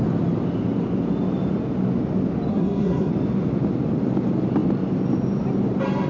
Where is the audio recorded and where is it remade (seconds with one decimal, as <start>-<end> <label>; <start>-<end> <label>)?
0.0-2.5 recorded; 2.5-3.1 remade; 3.1-6.1 recorded